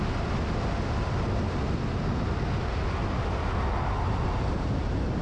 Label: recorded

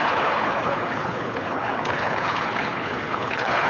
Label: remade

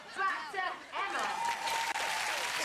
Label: remade